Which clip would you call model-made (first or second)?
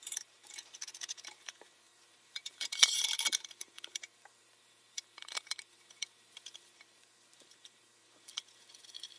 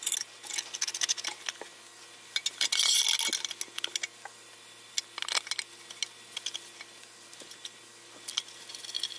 first